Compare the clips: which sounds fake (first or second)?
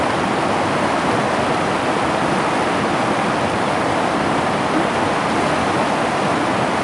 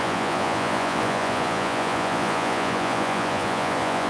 second